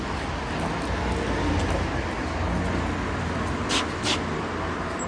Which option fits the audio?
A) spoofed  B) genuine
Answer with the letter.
B